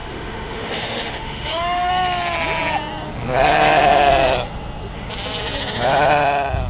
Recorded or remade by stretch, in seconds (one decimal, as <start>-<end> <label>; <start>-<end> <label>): 0.0-1.9 remade; 1.9-6.7 recorded